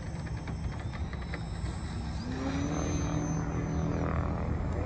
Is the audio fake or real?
real